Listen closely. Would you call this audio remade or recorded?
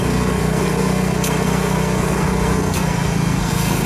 remade